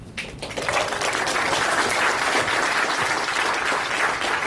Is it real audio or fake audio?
fake